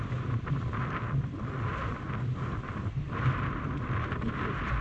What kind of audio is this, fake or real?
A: fake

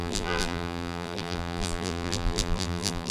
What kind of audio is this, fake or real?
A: fake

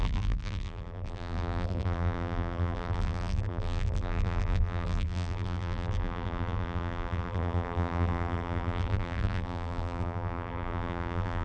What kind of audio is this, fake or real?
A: fake